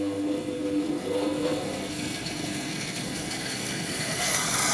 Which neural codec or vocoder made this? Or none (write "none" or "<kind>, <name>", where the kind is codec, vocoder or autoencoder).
codec, SNAC